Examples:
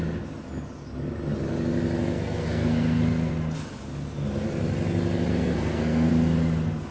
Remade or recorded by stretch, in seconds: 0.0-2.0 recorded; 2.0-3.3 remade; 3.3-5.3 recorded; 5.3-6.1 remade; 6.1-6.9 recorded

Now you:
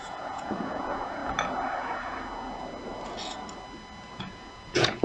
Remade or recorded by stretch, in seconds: 0.0-1.2 remade; 1.2-4.2 recorded; 4.2-5.0 remade

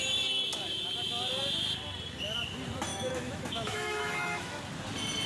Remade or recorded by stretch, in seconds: 0.0-2.9 recorded; 2.9-4.6 remade; 4.6-5.3 recorded

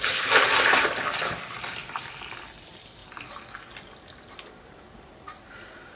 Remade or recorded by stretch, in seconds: 0.0-3.0 remade; 3.0-4.7 recorded; 4.7-6.0 remade

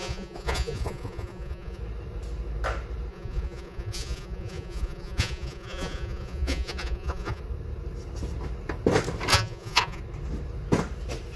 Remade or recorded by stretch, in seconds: 0.0-1.8 remade; 1.8-3.1 recorded; 3.1-7.4 remade; 7.4-9.3 recorded; 9.3-10.0 remade; 10.0-11.4 recorded